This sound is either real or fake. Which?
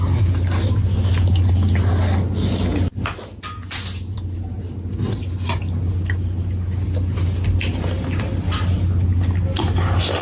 real